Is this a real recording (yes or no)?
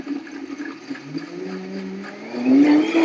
yes